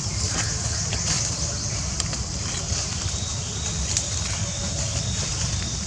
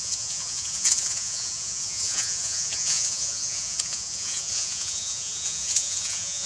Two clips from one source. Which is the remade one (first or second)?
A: second